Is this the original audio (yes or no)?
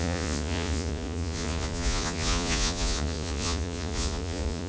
no